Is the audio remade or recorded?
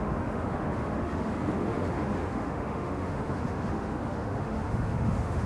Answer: remade